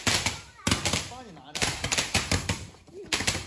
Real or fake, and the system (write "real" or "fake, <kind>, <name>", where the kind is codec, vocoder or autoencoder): real